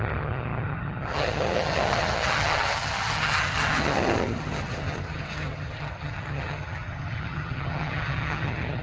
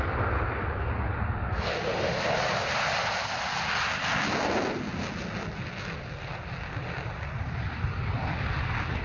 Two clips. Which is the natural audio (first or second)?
second